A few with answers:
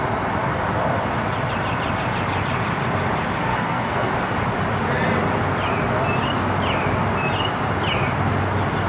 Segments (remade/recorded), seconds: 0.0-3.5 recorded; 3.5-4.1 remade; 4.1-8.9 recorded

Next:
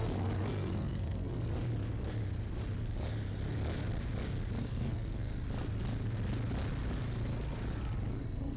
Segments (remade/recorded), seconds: 0.0-1.5 remade; 1.5-4.6 recorded; 4.6-5.3 remade; 5.3-8.1 recorded; 8.1-8.6 remade